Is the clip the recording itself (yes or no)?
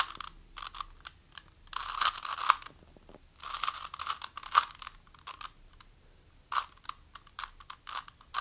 yes